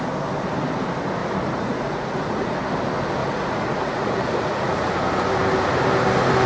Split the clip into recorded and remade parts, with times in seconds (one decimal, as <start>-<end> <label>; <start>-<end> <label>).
0.0-1.2 recorded; 1.2-2.6 remade; 2.6-3.2 recorded; 3.2-4.9 remade; 4.9-6.5 recorded